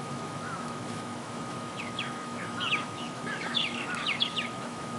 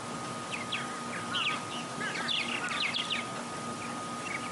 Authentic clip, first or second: second